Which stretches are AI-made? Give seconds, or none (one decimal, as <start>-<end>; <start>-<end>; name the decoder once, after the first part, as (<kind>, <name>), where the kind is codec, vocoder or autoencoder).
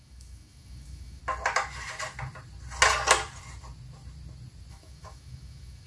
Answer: 0.0-1.2 (autoencoder, DAC-VAE); 4.7-5.9